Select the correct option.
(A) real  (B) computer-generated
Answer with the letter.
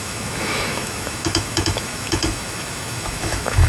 B